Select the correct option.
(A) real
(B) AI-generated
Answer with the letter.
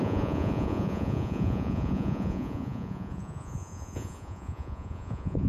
B